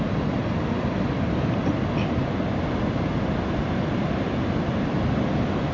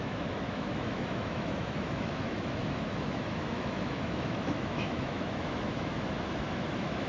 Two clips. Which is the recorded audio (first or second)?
first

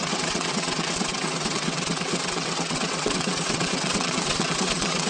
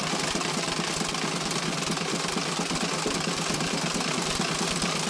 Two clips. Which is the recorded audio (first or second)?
second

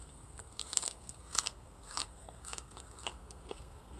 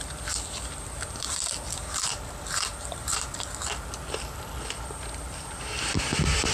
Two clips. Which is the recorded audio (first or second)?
second